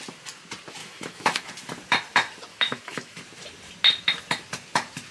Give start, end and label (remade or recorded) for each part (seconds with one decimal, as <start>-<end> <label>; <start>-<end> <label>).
0.0-0.8 recorded; 0.8-1.5 remade; 1.5-2.5 recorded; 2.5-3.2 remade; 3.2-5.1 recorded